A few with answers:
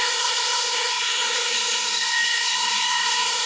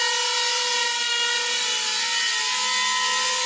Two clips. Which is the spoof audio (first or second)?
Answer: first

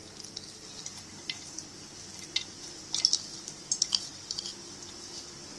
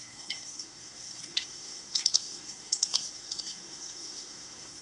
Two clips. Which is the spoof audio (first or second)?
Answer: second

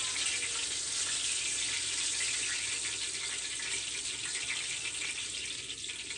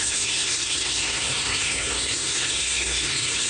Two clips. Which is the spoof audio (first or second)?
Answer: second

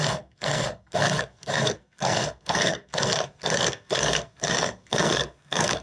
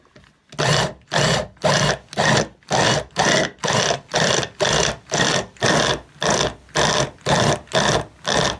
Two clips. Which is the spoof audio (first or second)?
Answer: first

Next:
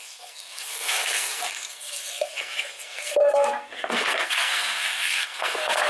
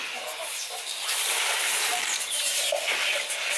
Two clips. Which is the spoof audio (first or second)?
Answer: first